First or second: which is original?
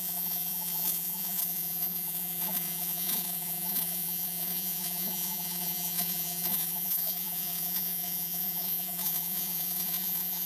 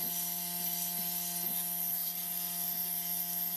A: second